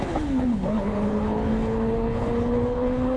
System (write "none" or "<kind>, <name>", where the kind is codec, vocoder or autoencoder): codec, HILCodec